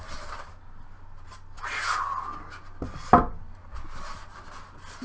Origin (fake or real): real